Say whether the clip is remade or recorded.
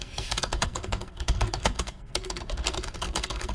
remade